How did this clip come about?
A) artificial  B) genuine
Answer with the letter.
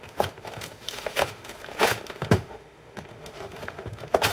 A